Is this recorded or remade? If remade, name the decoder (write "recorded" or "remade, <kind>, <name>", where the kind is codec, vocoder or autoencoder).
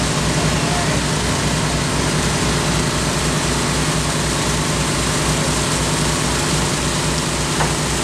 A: recorded